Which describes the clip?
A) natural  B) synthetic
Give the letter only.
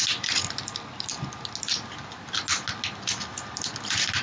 A